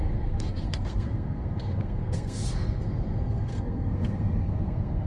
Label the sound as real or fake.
fake